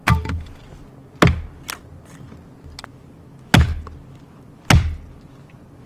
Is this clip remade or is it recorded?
recorded